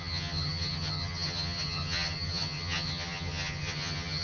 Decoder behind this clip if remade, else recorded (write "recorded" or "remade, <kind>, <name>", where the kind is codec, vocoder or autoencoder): remade, vocoder, HiFi-GAN